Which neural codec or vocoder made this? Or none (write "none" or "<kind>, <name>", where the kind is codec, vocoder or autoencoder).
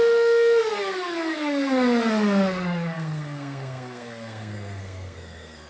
codec, SNAC